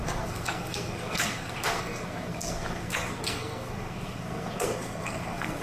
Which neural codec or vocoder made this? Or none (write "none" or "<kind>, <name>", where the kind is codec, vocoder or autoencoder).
codec, SNAC